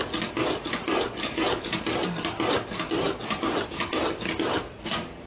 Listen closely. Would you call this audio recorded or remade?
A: recorded